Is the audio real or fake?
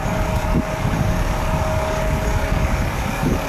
fake